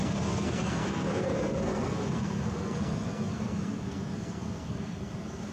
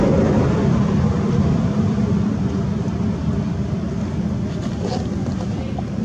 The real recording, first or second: second